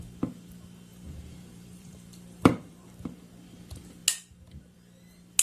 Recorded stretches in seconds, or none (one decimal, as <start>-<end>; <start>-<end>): 0.0-0.9; 2.9-5.4